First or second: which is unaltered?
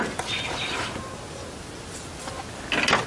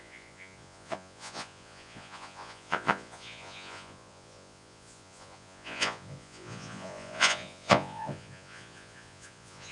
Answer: first